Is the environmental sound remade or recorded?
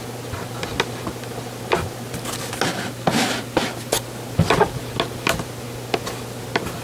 recorded